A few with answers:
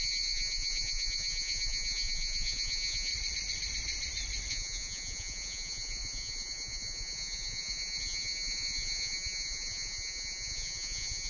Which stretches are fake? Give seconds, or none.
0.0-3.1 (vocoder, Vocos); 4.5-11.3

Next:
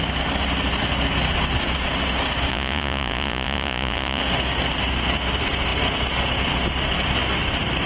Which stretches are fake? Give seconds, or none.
2.5-4.2 (vocoder, Vocos)

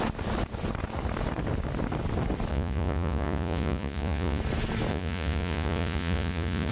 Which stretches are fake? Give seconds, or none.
2.5-4.4 (vocoder, Vocos); 4.9-6.7